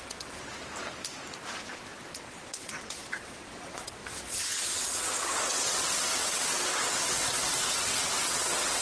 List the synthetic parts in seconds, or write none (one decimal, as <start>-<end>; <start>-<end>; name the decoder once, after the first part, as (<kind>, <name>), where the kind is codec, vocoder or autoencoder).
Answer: 0.0-0.5 (vocoder, WaveNeXt); 2.2-8.8